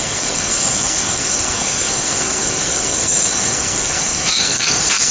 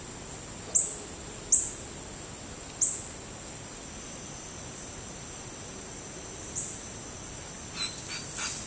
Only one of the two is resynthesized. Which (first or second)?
first